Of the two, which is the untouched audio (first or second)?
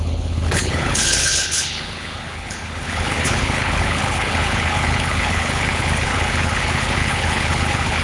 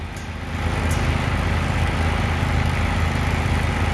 second